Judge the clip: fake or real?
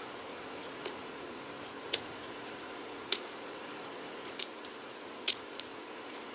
fake